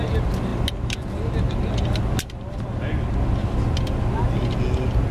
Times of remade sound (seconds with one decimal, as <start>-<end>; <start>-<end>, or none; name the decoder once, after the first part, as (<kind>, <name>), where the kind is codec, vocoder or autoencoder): none